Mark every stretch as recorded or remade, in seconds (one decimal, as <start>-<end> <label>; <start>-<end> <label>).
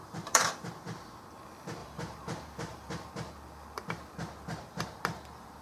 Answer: 0.0-0.7 remade; 0.7-1.8 recorded; 1.8-3.1 remade; 3.1-5.6 recorded